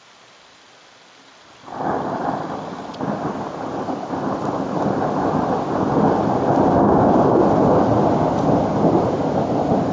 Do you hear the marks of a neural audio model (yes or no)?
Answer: no